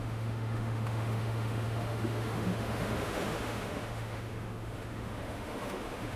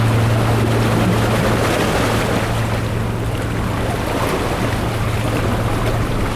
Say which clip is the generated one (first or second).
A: first